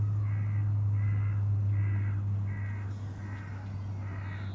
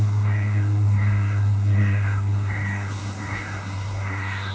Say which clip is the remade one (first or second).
second